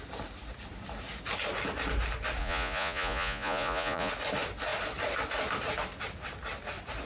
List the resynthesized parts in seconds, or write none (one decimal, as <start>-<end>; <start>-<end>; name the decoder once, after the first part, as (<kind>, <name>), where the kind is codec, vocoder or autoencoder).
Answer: 2.4-4.1 (vocoder, Vocos)